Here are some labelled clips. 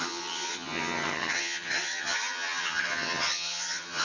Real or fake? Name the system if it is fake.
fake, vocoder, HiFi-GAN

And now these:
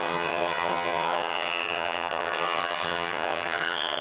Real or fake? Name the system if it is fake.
fake, vocoder, HiFi-GAN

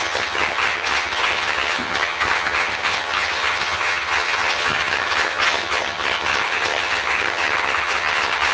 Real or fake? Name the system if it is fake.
fake, vocoder, HiFi-GAN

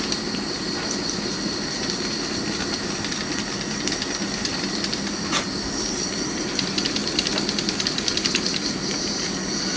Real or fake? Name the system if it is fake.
real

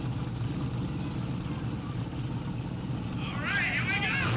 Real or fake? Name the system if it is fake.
real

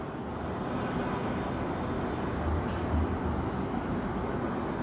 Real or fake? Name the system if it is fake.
real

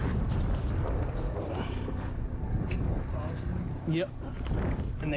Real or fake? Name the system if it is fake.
real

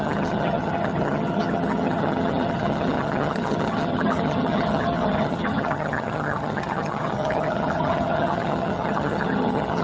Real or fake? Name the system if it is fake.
fake, vocoder, HiFi-GAN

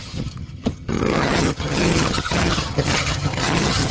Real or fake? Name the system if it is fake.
fake, vocoder, HiFi-GAN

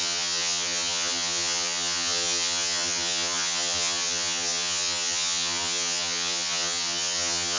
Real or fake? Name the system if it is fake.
fake, vocoder, HiFi-GAN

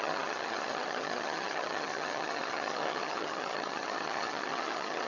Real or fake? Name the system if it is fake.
fake, vocoder, HiFi-GAN